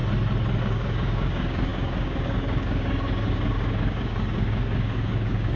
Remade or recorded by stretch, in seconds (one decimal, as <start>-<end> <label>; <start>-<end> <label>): 0.0-0.6 recorded; 0.6-5.6 remade